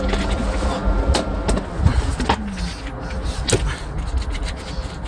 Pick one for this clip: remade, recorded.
recorded